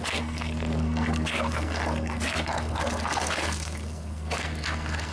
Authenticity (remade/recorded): remade